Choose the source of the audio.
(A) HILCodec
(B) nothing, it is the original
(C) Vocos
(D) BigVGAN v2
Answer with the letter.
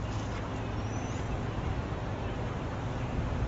D